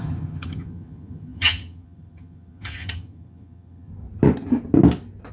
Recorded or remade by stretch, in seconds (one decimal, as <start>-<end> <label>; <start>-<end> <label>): 0.0-3.9 remade; 3.9-5.3 recorded